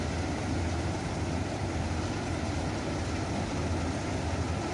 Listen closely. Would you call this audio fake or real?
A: real